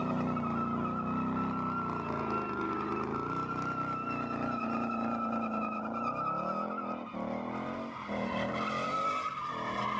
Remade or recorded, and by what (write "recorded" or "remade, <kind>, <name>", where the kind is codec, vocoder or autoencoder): recorded